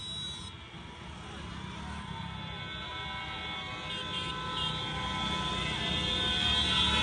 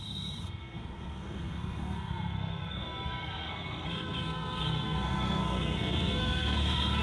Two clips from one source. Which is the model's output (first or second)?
second